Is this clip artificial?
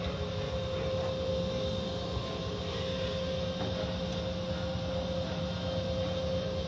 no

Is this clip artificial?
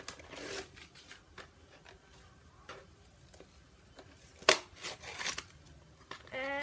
no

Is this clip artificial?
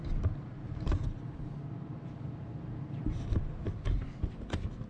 no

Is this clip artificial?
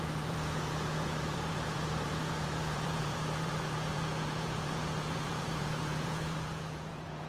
yes